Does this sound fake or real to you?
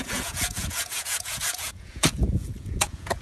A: fake